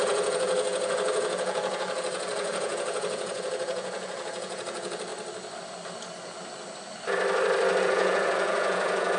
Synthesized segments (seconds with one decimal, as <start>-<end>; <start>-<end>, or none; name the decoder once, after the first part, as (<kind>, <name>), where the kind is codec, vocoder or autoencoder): 0.0-5.1 (vocoder, Vocos); 7.8-9.2